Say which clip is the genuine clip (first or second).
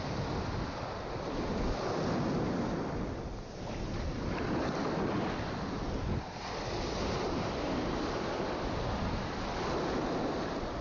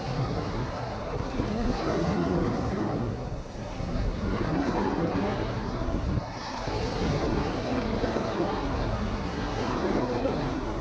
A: first